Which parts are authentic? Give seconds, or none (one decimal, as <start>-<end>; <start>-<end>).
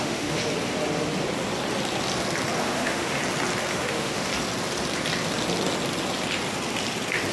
0.4-2.6; 3.2-3.7; 4.3-7.3